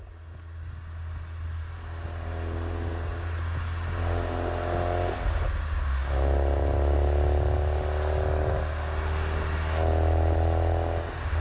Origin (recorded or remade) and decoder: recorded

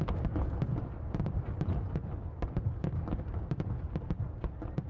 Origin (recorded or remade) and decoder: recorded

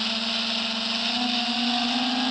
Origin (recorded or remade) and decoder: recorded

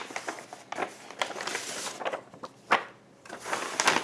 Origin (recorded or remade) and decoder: recorded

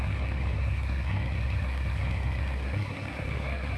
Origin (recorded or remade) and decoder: remade, codec, SNAC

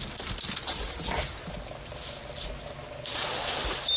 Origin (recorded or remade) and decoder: recorded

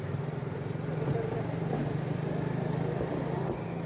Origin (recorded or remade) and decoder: recorded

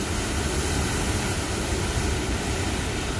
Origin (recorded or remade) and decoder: recorded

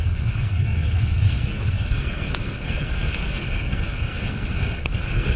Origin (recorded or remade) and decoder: remade, codec, SNAC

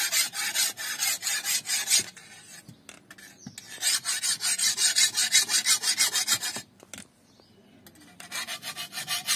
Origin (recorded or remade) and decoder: recorded